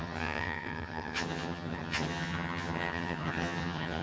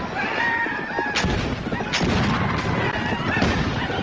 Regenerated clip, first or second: first